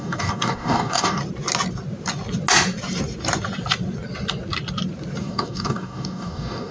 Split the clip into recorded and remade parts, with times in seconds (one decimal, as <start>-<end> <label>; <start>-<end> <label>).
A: 0.0-1.2 remade; 1.2-5.2 recorded; 5.2-6.7 remade